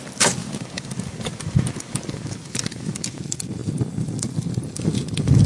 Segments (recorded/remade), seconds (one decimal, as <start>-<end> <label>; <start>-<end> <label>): 0.0-0.4 recorded; 0.4-3.2 remade; 3.2-5.5 recorded